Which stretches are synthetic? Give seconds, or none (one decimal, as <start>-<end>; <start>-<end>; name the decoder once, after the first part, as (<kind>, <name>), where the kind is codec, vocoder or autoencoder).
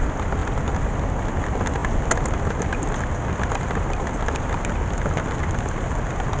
none